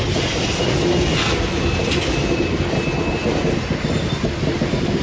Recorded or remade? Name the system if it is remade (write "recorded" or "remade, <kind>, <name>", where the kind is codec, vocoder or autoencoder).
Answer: recorded